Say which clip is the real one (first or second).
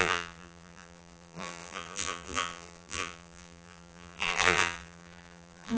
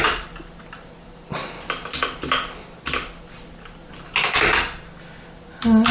second